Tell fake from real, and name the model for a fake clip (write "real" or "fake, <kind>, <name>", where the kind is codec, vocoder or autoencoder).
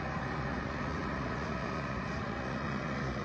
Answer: fake, vocoder, Vocos